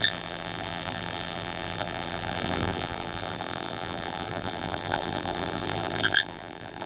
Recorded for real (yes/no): no